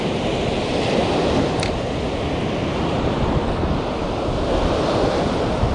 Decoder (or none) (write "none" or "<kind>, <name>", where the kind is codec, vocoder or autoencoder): none